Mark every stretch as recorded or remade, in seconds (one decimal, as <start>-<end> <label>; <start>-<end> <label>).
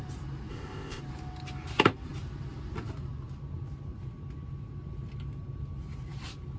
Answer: 0.0-0.5 recorded; 0.5-1.0 remade; 1.0-6.6 recorded